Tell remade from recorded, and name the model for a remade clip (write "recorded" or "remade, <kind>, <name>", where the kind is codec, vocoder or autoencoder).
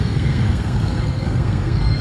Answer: remade, codec, SNAC